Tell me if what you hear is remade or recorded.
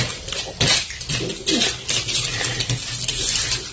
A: recorded